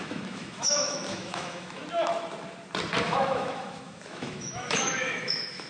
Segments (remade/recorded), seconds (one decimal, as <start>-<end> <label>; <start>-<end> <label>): 0.0-1.8 remade; 1.8-3.0 recorded; 3.0-5.7 remade